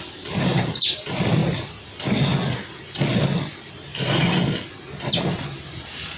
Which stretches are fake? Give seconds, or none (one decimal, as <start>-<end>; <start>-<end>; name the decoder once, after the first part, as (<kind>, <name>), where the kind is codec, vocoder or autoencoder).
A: none